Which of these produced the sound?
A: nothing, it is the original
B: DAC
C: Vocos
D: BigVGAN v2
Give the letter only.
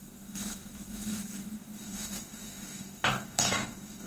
B